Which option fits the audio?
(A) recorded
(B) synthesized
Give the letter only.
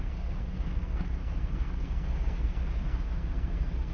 B